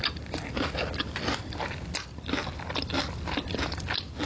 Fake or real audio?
real